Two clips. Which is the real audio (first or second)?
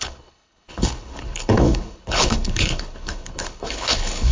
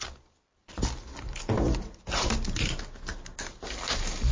second